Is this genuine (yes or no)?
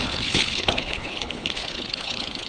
no